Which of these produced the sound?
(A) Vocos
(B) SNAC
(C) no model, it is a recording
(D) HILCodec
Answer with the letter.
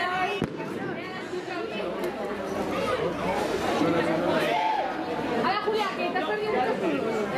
C